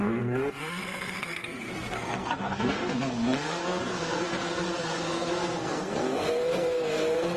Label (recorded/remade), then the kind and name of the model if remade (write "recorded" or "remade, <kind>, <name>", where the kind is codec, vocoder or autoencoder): remade, codec, SNAC